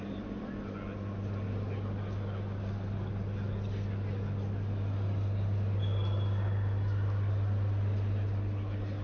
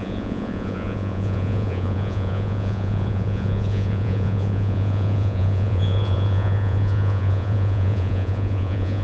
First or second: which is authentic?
first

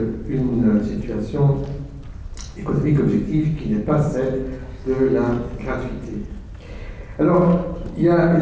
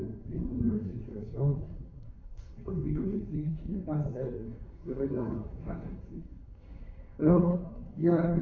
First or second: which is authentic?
first